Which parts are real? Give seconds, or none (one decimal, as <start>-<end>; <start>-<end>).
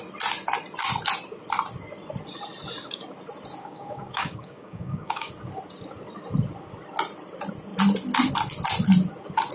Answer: 0.0-3.6; 5.3-9.5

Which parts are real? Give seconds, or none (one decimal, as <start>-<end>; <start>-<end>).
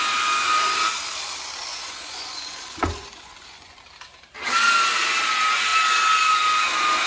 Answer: 0.0-1.7; 3.8-7.1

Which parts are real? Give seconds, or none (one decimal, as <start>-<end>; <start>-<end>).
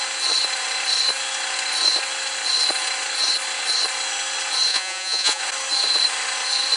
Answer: 0.0-4.7; 5.4-6.8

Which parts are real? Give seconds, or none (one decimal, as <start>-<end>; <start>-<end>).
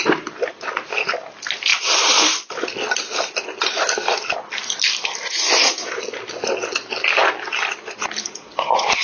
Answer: 0.0-9.0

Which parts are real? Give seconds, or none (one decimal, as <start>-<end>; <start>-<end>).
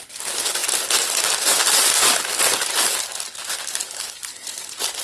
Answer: 0.0-3.8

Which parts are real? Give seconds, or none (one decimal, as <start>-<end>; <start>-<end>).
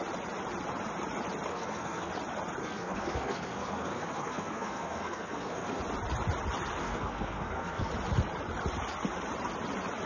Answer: 0.0-1.5; 2.1-2.6; 5.8-6.8; 7.9-10.1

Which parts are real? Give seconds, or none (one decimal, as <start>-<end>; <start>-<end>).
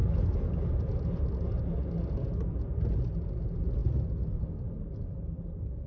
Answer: 0.0-5.9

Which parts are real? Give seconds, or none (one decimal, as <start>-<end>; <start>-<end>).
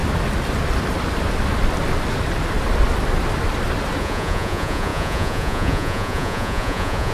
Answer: 0.0-4.0